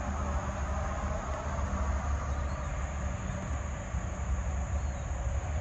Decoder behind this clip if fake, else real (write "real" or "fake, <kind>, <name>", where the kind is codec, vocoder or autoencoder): real